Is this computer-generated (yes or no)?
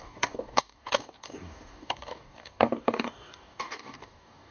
yes